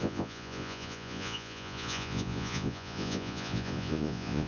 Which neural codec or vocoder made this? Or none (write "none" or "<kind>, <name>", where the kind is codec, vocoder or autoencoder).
vocoder, Vocos